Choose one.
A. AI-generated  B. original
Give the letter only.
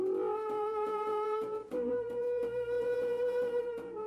A